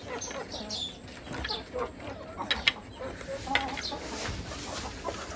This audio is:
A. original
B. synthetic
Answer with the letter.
A